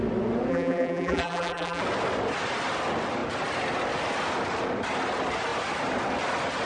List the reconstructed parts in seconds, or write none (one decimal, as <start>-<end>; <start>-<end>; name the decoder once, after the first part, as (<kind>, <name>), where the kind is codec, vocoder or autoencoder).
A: 0.5-1.8 (vocoder, BigVGAN v2)

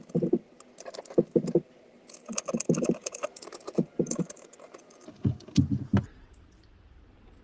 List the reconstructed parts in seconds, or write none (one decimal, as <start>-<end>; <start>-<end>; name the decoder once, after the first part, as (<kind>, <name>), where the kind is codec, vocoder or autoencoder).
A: 3.0-5.2 (vocoder, BigVGAN v2)

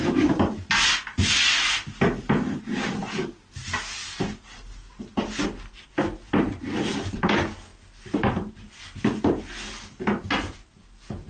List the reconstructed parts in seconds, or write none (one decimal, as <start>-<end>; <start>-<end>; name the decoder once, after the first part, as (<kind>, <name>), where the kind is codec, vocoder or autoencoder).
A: none

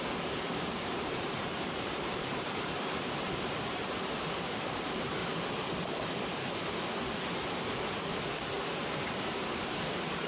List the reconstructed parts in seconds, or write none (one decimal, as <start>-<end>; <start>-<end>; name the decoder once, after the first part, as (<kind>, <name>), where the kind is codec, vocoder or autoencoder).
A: 0.0-5.2 (vocoder, BigVGAN v2); 8.4-10.3

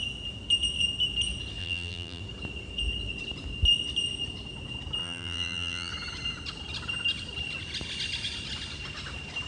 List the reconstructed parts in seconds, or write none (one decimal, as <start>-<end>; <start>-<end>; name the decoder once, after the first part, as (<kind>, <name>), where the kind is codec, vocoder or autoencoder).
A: 1.6-2.2 (vocoder, BigVGAN v2); 5.0-5.9

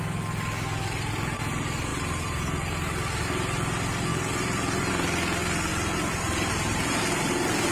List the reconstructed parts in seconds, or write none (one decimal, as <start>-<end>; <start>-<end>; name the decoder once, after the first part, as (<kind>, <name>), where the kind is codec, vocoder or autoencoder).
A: 1.9-3.2 (vocoder, BigVGAN v2); 4.1-4.9; 5.7-7.0